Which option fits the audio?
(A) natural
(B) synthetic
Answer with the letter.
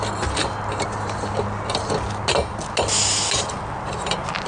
A